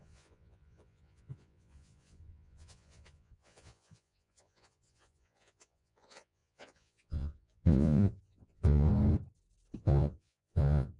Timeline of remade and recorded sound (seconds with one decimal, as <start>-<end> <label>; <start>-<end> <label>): 0.0-8.9 remade; 8.9-9.8 recorded; 9.8-11.0 remade